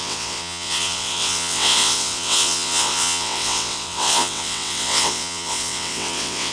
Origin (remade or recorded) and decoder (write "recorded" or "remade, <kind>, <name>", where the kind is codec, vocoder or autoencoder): remade, vocoder, WaveNeXt